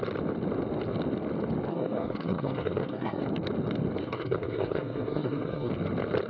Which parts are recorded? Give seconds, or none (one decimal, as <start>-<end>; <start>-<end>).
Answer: 0.0-1.7; 3.2-4.0; 5.7-6.3